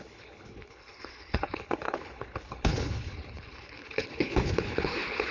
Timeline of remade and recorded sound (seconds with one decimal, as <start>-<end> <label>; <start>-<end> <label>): 0.0-5.3 remade